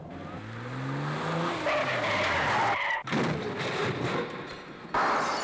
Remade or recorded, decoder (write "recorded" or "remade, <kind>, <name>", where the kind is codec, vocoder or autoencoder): recorded